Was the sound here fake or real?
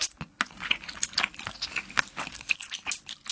real